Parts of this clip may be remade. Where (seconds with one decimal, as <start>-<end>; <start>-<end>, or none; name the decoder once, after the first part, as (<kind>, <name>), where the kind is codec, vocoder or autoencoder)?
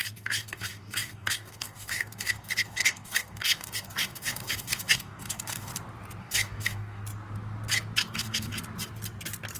0.0-5.7 (codec, DAC); 6.2-7.0; 8.1-8.5